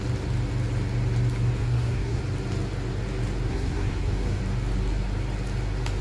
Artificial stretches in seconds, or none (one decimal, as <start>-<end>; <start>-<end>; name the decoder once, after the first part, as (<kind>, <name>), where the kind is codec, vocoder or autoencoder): 1.6-2.2 (codec, SNAC); 3.5-4.4